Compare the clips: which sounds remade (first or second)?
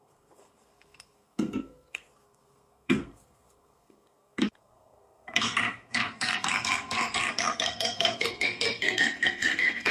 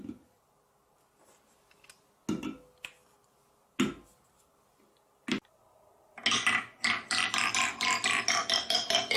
first